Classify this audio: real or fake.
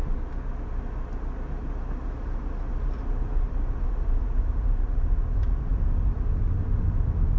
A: real